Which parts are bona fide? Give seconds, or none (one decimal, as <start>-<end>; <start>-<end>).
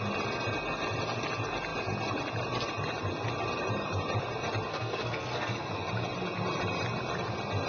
0.0-4.7; 5.7-7.7